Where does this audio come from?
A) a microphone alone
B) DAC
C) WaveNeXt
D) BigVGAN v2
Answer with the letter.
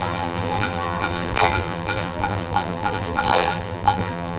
D